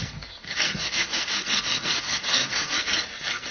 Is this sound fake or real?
fake